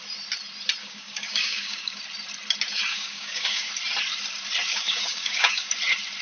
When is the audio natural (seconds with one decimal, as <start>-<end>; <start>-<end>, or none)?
0.0-0.8; 2.0-2.9; 3.7-4.7; 5.7-6.2